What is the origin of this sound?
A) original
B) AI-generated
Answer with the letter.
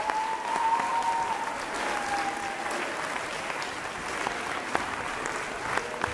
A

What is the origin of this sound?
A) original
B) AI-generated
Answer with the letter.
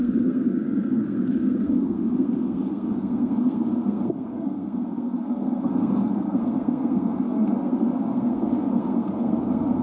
B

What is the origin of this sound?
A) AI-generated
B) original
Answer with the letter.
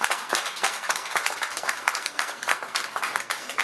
A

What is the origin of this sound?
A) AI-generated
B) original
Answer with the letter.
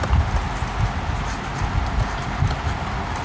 B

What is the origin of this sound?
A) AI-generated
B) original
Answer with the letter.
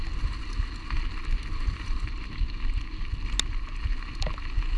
B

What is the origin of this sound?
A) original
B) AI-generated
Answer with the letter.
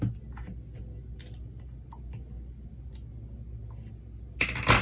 A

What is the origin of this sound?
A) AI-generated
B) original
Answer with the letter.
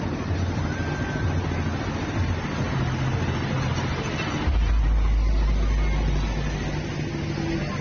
B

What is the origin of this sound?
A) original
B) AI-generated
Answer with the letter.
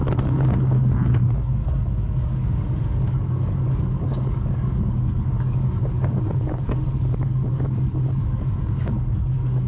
B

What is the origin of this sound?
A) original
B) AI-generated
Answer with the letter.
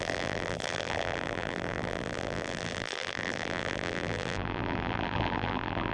B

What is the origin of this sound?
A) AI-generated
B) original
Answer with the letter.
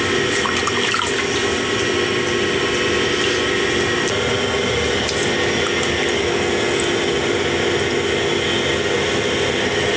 B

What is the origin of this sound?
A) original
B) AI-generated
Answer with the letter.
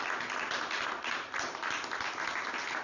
A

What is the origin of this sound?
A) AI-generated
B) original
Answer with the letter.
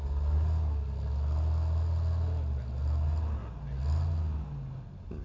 B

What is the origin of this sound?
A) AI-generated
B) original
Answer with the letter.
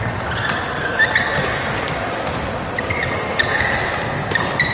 B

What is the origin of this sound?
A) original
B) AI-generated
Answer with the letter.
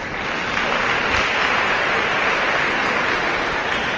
A